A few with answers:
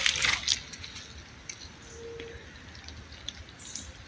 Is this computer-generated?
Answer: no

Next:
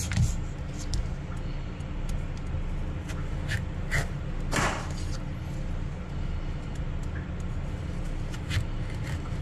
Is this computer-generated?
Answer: no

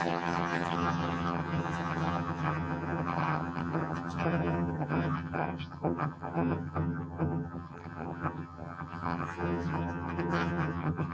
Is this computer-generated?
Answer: yes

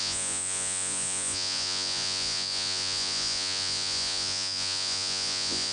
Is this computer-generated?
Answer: yes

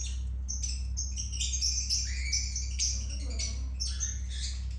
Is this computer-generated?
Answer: no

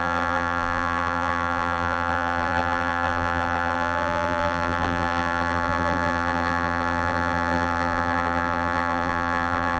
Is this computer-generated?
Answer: yes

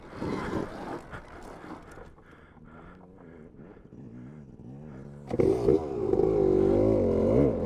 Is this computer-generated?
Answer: no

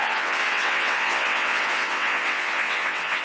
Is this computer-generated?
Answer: yes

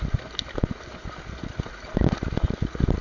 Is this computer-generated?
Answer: no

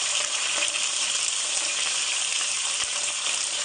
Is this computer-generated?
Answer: yes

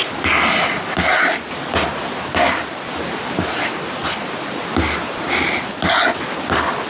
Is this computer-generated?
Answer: no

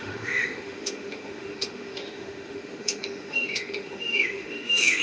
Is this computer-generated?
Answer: yes